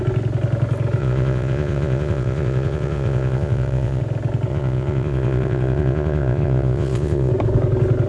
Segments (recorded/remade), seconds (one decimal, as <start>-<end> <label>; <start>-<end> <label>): 0.0-1.0 recorded; 1.0-4.0 remade; 4.0-4.5 recorded; 4.5-7.3 remade; 7.3-8.1 recorded